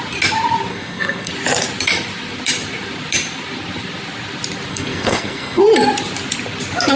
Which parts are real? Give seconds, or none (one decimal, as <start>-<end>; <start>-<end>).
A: 0.0-0.7; 1.3-4.7; 5.6-7.0